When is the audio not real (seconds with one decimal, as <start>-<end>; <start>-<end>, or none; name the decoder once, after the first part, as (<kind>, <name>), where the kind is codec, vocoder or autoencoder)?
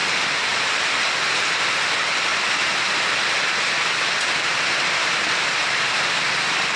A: 0.0-1.1 (vocoder, BigVGAN v2); 2.3-6.8